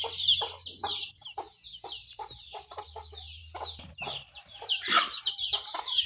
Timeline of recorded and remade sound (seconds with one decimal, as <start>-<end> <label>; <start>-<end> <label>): 0.0-1.7 recorded; 1.7-2.6 remade; 2.6-3.4 recorded; 3.4-6.1 remade